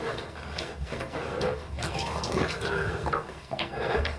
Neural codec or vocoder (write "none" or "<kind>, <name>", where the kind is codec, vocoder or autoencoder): codec, SNAC